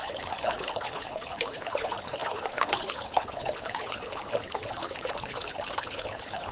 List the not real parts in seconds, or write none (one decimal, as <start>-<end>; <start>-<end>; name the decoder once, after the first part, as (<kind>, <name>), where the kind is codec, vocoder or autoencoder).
0.0-6.5 (codec, HILCodec)

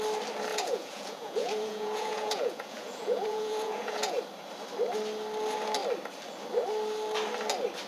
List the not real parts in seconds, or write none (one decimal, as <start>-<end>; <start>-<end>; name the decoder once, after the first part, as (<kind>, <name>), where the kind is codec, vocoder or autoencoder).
0.5-4.2 (vocoder, Vocos)

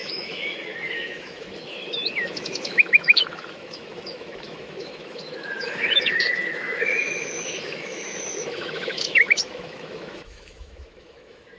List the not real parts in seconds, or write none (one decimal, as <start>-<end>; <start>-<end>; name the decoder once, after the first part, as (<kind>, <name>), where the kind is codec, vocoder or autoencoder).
0.0-11.6 (autoencoder, DAC-VAE)

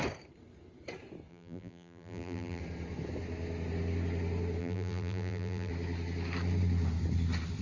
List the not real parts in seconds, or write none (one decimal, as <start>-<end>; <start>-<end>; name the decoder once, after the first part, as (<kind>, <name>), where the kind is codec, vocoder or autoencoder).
1.3-2.6 (vocoder, BigVGAN v2); 4.6-5.7

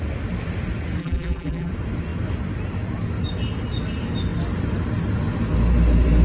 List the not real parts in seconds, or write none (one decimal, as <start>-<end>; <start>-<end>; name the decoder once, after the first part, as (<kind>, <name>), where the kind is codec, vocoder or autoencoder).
1.0-1.7 (vocoder, BigVGAN v2)

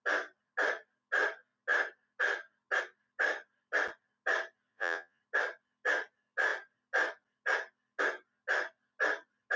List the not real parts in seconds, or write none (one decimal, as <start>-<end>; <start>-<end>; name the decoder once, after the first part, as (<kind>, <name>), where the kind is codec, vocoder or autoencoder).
4.7-5.2 (vocoder, Vocos)

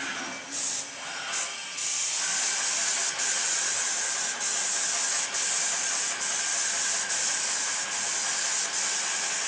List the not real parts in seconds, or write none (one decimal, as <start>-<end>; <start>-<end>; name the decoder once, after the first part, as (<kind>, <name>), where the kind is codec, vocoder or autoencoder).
1.8-2.5 (vocoder, BigVGAN v2)

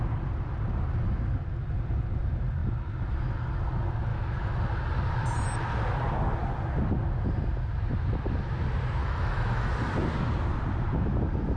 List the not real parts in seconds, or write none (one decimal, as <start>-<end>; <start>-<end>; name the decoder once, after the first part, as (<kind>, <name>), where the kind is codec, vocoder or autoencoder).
4.1-4.6 (autoencoder, DAC-VAE); 9.0-9.7